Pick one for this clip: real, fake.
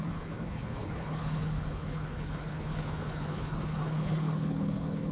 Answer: fake